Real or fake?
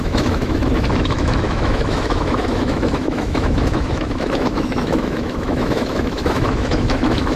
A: fake